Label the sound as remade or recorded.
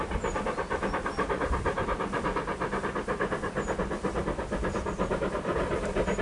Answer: recorded